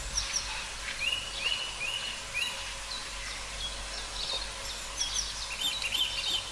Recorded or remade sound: recorded